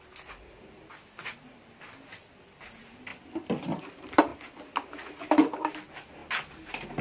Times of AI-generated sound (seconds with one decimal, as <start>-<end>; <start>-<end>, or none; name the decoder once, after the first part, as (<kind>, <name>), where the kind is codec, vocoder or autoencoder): none